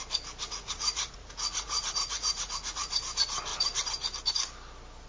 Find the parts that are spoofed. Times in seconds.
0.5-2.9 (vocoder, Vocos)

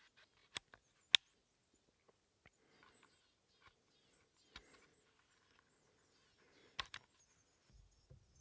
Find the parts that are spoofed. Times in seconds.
none